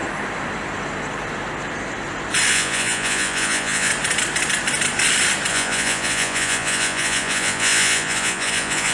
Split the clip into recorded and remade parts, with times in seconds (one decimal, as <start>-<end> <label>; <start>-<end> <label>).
0.0-2.5 recorded; 2.5-3.9 remade; 3.9-5.5 recorded; 5.5-8.9 remade